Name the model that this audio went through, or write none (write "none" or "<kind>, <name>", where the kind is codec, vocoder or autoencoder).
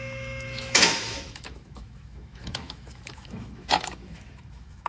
autoencoder, DAC-VAE